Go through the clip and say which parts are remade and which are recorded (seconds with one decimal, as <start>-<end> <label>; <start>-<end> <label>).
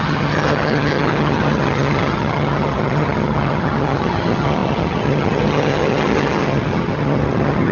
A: 0.0-7.7 remade